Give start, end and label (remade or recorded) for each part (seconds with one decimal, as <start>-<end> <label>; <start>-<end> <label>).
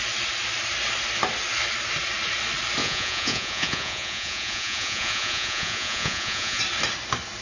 0.0-2.8 recorded; 2.8-6.6 remade; 6.6-7.4 recorded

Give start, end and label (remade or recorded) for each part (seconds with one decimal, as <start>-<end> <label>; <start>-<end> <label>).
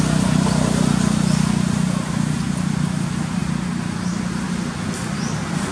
0.0-5.7 recorded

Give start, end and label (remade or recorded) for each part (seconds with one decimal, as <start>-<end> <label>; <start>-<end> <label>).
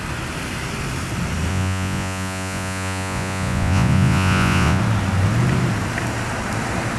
0.0-1.5 recorded; 1.5-4.8 remade; 4.8-7.0 recorded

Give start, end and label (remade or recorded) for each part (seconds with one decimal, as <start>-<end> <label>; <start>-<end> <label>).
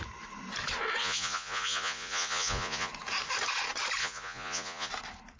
0.0-1.0 recorded; 1.0-2.9 remade; 2.9-4.0 recorded; 4.0-4.9 remade; 4.9-5.4 recorded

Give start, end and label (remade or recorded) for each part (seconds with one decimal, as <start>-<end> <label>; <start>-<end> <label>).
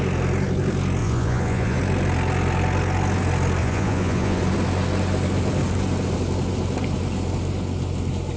0.0-1.0 recorded; 1.0-1.8 remade; 1.8-3.6 recorded; 3.6-4.4 remade; 4.4-8.4 recorded